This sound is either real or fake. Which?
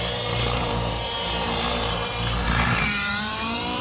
fake